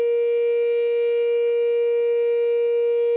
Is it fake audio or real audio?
real